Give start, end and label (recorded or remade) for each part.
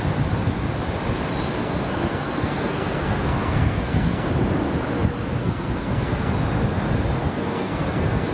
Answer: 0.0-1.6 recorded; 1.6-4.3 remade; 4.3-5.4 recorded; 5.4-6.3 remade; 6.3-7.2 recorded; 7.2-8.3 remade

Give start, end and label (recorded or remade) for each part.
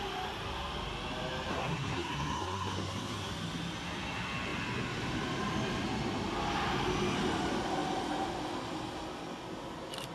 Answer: 0.0-1.5 recorded; 1.5-3.3 remade; 3.3-10.1 recorded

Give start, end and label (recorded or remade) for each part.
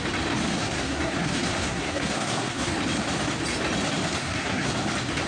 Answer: 0.0-0.5 recorded; 0.5-2.7 remade; 2.7-4.2 recorded; 4.2-4.7 remade; 4.7-5.3 recorded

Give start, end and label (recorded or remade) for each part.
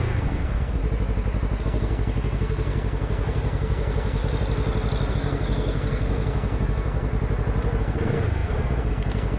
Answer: 0.0-0.8 remade; 0.8-1.6 recorded; 1.6-4.2 remade; 4.2-5.1 recorded; 5.1-7.1 remade; 7.1-7.8 recorded; 7.8-9.4 remade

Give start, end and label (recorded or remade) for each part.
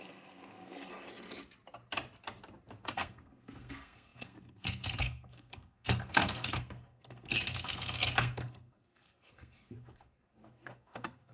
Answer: 0.0-0.9 remade; 0.9-2.9 recorded; 2.9-11.3 remade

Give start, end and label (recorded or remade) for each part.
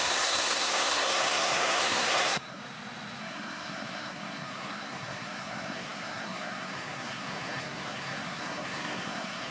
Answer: 0.0-2.6 remade; 2.6-3.2 recorded; 3.2-9.5 remade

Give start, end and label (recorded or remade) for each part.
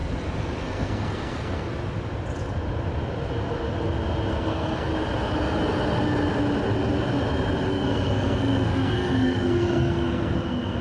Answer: 0.0-0.6 recorded; 0.6-1.7 remade; 1.7-4.3 recorded; 4.3-4.9 remade; 4.9-7.7 recorded; 7.7-10.8 remade